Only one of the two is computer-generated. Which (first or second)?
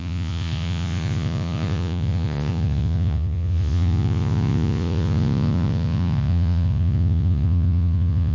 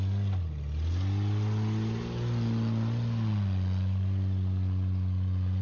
first